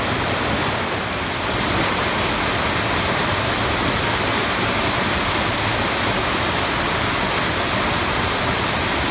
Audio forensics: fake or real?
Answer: real